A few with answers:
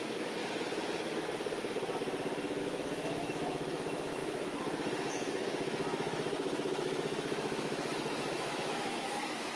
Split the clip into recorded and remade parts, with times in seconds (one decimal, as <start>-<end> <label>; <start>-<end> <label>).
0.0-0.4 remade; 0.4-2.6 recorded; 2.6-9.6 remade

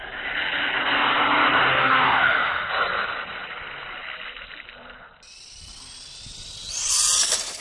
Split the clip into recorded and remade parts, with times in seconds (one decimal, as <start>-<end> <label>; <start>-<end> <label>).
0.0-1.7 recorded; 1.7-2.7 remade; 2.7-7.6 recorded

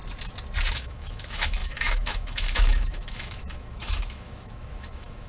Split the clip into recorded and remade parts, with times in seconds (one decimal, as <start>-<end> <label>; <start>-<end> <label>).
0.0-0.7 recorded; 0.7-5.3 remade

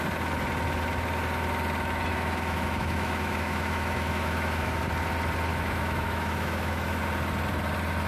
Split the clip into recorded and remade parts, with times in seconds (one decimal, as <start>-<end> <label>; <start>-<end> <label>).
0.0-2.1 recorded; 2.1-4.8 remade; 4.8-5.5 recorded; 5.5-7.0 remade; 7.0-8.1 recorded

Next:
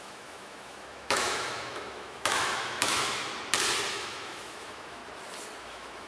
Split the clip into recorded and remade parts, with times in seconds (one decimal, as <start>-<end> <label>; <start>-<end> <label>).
0.0-3.3 remade; 3.3-3.9 recorded; 3.9-5.0 remade; 5.0-5.6 recorded; 5.6-6.1 remade